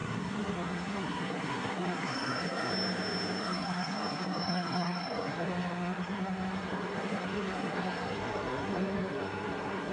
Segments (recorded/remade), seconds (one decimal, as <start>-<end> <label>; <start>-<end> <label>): 0.0-2.7 remade; 2.7-3.4 recorded; 3.4-9.9 remade